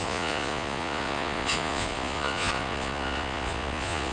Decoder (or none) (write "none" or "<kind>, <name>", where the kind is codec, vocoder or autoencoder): vocoder, Vocos